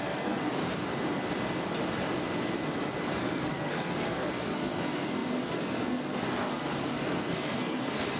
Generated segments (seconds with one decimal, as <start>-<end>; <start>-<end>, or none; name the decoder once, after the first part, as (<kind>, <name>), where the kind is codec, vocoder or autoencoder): 0.0-0.6 (codec, SNAC); 3.1-8.2